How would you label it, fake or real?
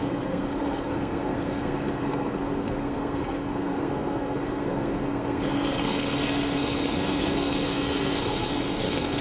fake